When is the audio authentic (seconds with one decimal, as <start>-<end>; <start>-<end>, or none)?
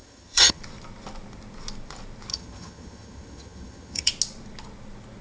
0.6-2.3; 4.1-5.2